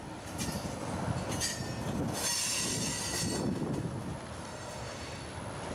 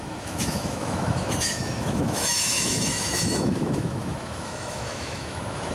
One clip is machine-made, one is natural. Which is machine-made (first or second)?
second